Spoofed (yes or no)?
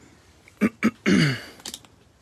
no